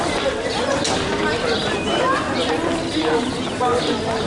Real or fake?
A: real